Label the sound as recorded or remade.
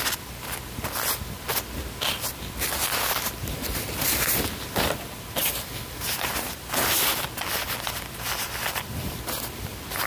recorded